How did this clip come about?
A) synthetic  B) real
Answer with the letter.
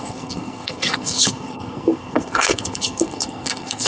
A